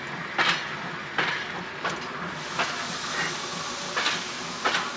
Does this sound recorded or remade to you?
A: recorded